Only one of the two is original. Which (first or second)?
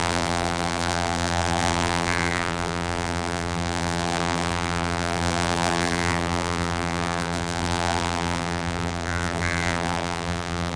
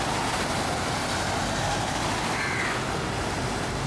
second